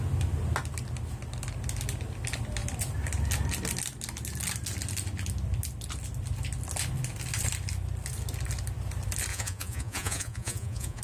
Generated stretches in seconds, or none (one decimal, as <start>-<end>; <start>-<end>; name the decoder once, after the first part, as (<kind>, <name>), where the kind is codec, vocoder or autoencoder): 9.3-11.0 (vocoder, Vocos)